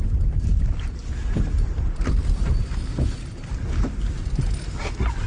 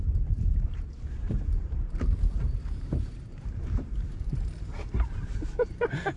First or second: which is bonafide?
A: first